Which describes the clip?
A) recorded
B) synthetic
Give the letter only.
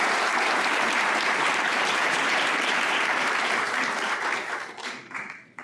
B